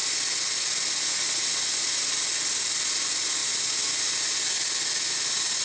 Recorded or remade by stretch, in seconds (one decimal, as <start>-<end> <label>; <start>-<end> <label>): 0.0-5.6 recorded